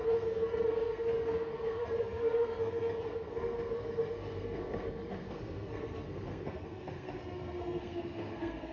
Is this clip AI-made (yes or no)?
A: yes